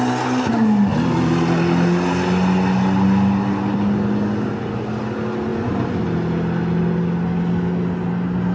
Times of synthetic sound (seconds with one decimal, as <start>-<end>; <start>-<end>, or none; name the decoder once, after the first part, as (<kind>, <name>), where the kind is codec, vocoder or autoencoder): none